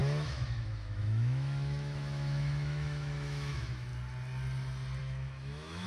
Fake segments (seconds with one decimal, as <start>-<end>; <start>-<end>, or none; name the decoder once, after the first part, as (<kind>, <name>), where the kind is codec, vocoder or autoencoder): 0.0-3.9 (autoencoder, DAC-VAE); 5.0-5.9